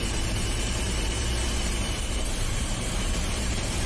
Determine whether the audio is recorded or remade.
remade